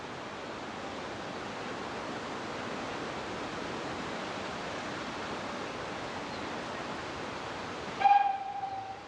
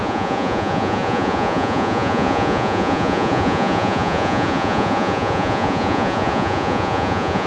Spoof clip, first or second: second